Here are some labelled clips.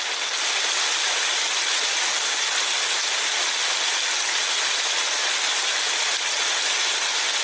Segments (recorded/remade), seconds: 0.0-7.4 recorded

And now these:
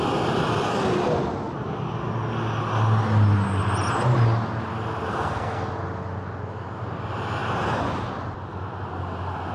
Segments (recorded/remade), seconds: 0.0-5.1 recorded; 5.1-5.7 remade; 5.7-9.5 recorded